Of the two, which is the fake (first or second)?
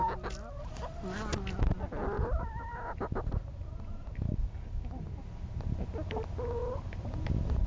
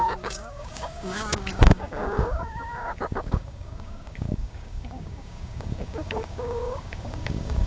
second